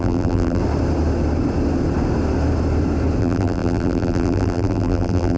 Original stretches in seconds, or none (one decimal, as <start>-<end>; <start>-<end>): 0.6-3.2